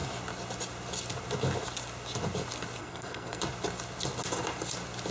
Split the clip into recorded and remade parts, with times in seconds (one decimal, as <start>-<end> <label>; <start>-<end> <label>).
0.0-2.8 recorded; 2.8-3.4 remade; 3.4-5.1 recorded